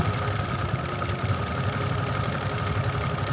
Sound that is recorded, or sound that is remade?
recorded